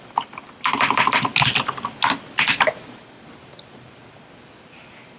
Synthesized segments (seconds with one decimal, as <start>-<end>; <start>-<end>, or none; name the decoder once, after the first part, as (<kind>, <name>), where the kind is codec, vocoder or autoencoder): none